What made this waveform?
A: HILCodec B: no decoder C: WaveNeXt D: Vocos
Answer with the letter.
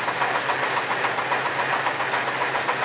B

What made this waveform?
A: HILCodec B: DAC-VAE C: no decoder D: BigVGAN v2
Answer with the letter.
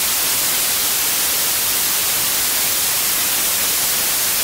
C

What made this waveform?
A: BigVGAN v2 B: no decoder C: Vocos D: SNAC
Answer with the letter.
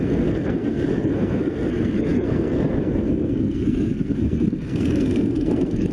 D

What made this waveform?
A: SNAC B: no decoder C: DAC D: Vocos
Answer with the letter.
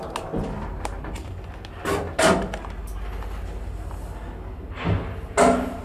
B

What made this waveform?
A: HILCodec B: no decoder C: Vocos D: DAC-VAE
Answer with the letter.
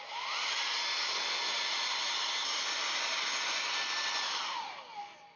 B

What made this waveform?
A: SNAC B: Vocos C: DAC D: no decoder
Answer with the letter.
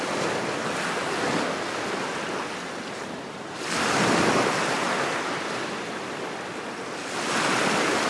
D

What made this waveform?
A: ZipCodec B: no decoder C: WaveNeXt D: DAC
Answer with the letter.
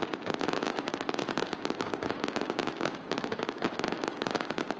D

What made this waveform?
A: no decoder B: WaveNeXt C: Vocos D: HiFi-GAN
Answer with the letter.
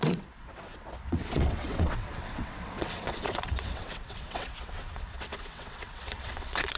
B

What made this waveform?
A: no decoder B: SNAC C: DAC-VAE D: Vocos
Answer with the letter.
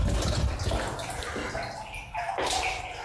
A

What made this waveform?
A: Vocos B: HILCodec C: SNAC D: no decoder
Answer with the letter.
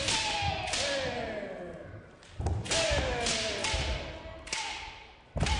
D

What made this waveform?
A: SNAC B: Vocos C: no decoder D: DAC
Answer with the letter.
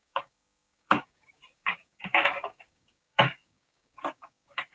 D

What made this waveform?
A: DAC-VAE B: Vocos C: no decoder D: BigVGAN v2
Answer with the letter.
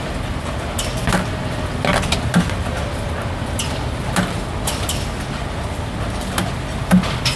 C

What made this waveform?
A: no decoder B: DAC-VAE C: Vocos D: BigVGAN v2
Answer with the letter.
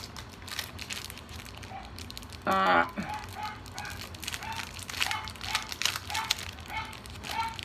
A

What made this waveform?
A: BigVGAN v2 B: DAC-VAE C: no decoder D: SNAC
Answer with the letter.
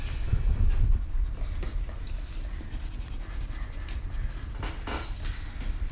C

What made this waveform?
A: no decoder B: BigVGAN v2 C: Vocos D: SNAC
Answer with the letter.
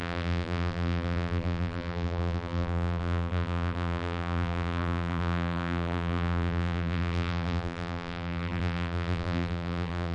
B